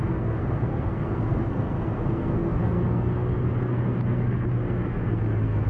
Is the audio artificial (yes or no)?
yes